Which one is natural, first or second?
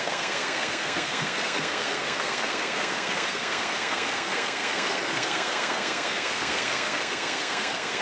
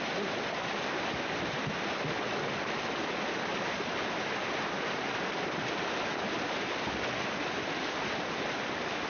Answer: second